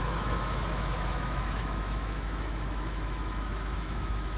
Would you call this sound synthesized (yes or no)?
yes